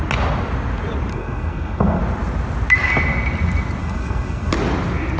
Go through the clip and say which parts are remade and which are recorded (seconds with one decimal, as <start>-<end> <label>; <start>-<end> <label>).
0.0-1.1 recorded; 1.1-2.0 remade; 2.0-3.8 recorded; 3.8-4.5 remade; 4.5-5.2 recorded

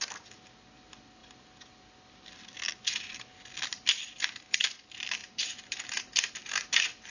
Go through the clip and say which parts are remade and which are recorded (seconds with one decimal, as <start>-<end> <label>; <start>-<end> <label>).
0.0-5.2 recorded; 5.2-6.0 remade; 6.0-6.4 recorded; 6.4-7.1 remade